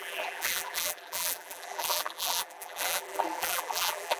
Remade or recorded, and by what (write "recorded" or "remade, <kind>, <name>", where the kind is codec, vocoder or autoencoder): remade, vocoder, BigVGAN v2